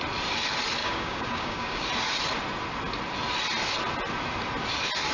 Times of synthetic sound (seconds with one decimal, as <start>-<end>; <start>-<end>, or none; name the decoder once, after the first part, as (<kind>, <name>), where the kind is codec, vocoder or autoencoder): 0.8-1.9 (codec, DAC)